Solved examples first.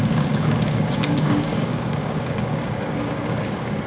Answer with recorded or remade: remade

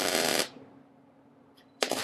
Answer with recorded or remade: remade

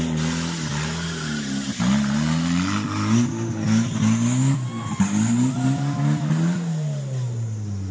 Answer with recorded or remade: recorded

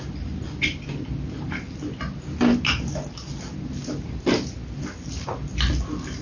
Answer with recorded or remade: recorded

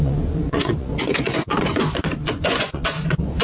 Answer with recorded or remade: remade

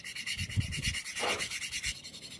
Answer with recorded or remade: recorded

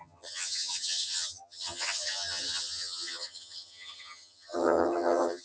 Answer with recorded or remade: remade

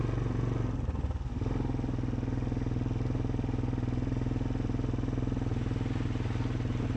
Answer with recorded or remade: recorded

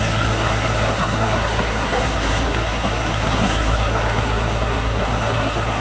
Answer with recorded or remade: remade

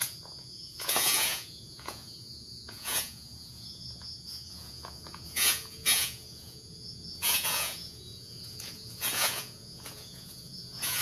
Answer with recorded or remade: remade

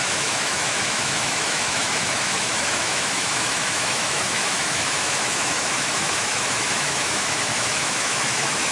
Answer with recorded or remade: remade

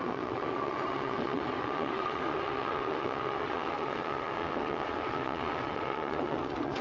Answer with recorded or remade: remade